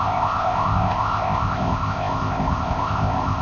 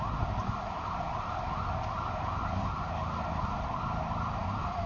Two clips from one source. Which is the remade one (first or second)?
first